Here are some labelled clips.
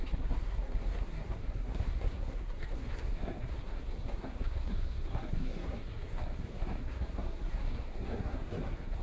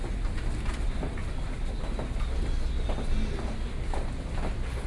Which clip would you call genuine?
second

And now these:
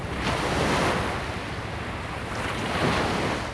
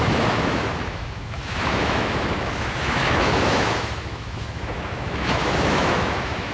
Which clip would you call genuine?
first